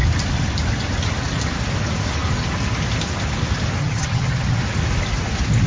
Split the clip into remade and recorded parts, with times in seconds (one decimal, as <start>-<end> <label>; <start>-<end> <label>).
0.0-3.8 recorded; 3.8-4.6 remade; 4.6-5.7 recorded

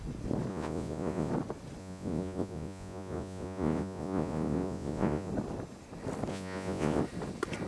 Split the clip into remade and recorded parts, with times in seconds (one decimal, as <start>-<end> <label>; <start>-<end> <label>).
0.0-0.5 recorded; 0.5-1.3 remade; 1.3-1.8 recorded; 1.8-5.3 remade; 5.3-6.3 recorded; 6.3-7.0 remade; 7.0-7.7 recorded